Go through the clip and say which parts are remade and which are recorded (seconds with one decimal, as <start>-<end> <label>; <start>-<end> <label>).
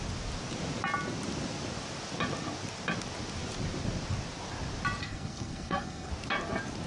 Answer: 0.0-5.0 recorded; 5.0-6.1 remade; 6.1-6.9 recorded